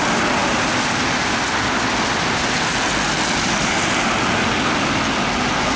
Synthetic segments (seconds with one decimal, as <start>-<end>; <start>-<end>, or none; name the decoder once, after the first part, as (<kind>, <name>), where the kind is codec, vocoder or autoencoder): none